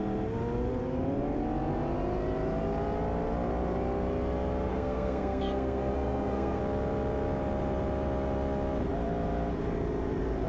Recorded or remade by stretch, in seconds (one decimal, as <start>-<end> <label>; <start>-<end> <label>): 0.0-4.7 recorded; 4.7-6.6 remade; 6.6-10.5 recorded